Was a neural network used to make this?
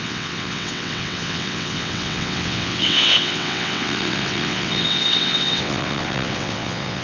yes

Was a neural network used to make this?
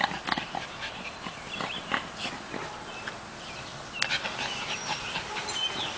no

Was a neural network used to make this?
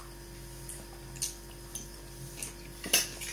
no